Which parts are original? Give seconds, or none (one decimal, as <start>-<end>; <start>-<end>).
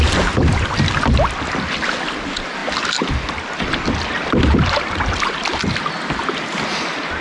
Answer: 0.0-7.2